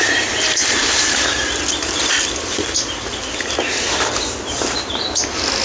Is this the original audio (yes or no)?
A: yes